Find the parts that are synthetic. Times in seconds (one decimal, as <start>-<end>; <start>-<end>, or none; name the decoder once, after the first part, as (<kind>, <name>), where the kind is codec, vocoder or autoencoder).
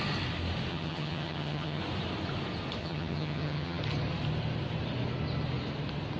0.7-1.8 (vocoder, HiFi-GAN); 2.8-3.8